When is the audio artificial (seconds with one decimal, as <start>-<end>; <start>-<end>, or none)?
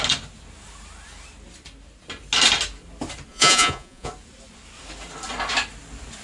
3.3-4.1